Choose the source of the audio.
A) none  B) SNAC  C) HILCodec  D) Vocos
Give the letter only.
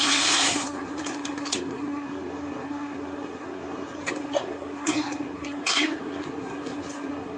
B